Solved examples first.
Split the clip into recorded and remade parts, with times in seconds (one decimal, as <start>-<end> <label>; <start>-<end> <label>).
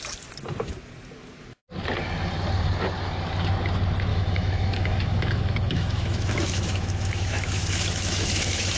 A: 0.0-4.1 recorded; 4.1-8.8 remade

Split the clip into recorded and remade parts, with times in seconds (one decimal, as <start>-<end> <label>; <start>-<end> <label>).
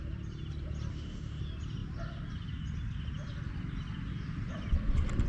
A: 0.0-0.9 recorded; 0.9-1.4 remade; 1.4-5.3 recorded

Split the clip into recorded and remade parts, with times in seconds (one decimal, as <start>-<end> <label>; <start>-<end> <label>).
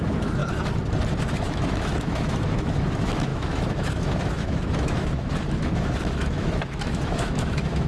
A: 0.0-0.4 remade; 0.4-1.2 recorded; 1.2-7.9 remade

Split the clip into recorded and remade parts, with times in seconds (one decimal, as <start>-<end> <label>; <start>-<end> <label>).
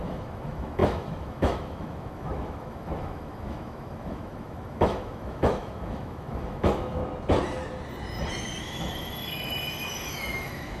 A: 0.0-7.0 remade; 7.0-8.6 recorded; 8.6-10.8 remade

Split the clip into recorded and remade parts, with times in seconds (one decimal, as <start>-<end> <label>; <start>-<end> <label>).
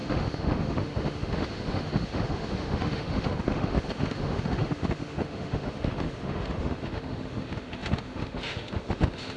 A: 0.0-9.4 remade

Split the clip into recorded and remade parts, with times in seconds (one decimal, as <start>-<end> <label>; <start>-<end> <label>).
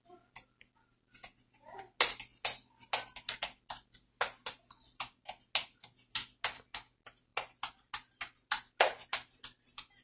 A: 0.0-10.0 recorded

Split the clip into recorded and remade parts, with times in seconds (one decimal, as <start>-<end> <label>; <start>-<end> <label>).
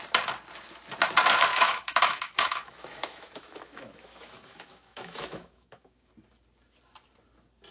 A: 0.0-1.5 recorded; 1.5-6.1 remade; 6.1-7.7 recorded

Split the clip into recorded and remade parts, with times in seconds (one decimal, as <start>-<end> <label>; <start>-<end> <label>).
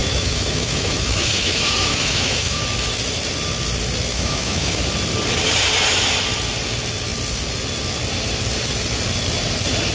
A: 0.0-2.6 remade; 2.6-4.1 recorded; 4.1-4.8 remade; 4.8-9.9 recorded